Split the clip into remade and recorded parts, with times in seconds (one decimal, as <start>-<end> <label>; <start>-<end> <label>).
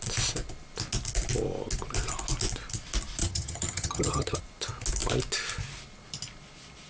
0.0-3.2 recorded; 3.2-4.4 remade; 4.4-6.9 recorded